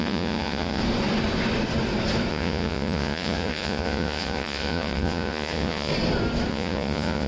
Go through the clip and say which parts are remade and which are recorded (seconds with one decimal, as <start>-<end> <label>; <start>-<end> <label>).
0.0-0.8 remade; 0.8-2.3 recorded; 2.3-5.9 remade; 5.9-6.5 recorded; 6.5-7.3 remade